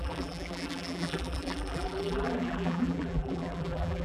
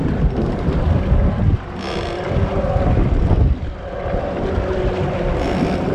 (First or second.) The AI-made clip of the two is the first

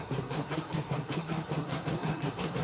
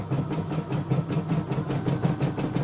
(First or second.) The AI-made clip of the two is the first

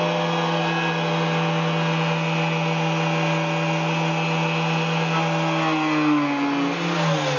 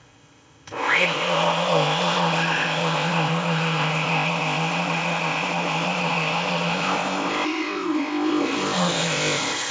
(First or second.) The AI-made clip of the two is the second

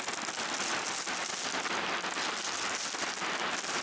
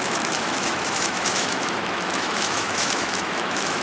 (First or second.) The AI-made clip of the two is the second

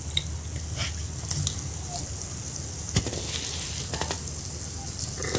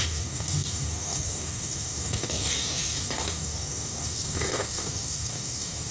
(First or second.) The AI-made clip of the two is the second